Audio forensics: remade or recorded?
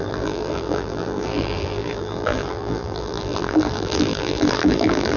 remade